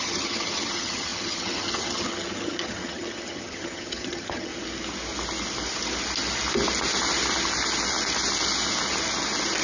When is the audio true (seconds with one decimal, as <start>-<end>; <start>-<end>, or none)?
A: 4.5-9.6